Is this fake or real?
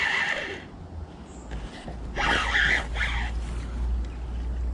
real